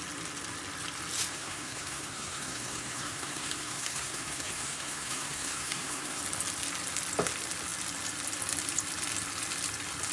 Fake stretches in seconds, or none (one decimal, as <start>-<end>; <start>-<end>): 1.3-6.2